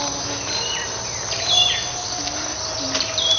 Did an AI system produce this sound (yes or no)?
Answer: no